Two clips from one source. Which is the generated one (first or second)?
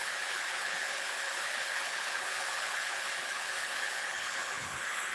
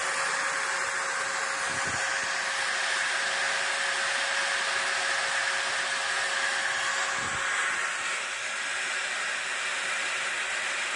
first